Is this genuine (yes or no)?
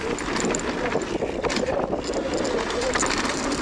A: yes